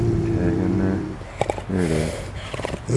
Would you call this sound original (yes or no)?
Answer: yes